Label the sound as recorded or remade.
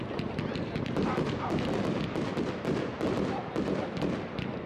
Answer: remade